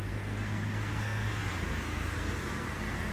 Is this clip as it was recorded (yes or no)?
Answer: no